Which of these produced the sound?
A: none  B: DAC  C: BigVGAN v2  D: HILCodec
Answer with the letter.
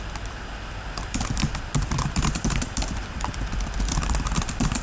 C